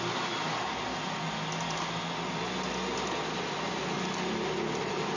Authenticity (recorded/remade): recorded